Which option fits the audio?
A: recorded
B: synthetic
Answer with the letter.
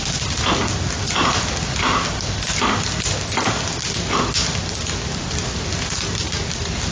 A